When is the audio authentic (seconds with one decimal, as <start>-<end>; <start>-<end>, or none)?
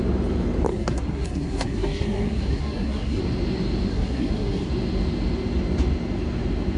0.0-0.7; 3.2-3.9; 4.7-6.8